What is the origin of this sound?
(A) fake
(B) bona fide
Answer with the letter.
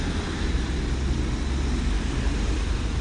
B